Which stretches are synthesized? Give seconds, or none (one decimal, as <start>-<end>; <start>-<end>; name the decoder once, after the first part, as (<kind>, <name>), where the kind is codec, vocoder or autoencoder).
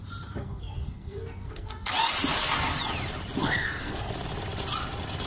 0.4-1.9 (codec, SNAC); 3.4-4.1